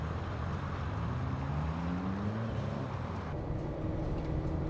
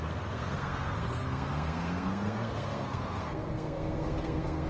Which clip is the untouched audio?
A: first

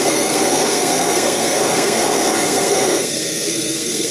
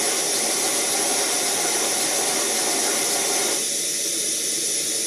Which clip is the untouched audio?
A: second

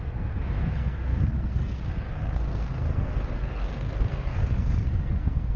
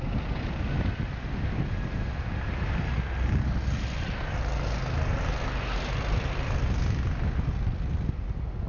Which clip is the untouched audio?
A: second